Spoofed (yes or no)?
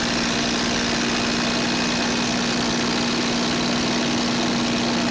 no